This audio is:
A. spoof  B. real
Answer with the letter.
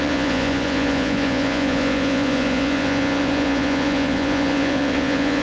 A